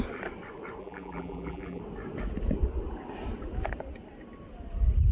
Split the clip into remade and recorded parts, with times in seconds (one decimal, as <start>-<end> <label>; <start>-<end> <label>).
0.0-0.8 recorded; 0.8-1.8 remade; 1.8-5.1 recorded